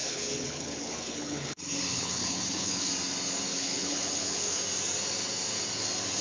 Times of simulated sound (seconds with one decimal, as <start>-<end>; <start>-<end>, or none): 0.0-2.9; 3.5-4.6